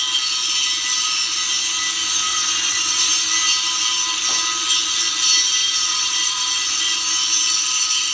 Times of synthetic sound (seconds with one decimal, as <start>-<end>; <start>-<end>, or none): 2.3-3.1; 5.9-6.5